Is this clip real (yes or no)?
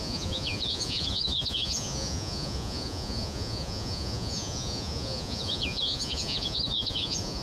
no